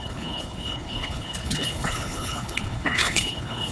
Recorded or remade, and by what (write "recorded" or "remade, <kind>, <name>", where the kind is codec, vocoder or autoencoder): remade, codec, HILCodec